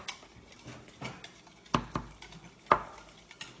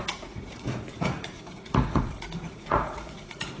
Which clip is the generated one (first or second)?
second